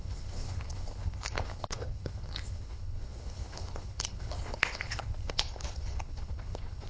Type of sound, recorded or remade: remade